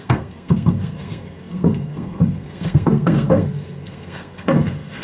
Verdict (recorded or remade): remade